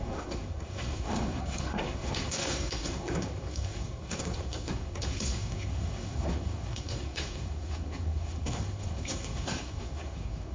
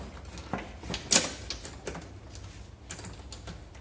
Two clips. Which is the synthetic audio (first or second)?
first